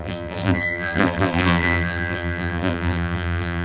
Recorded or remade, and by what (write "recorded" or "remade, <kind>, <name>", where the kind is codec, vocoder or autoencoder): remade, vocoder, BigVGAN v2